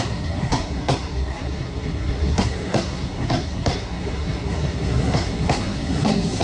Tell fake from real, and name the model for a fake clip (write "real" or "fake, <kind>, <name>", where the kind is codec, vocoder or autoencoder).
fake, codec, SNAC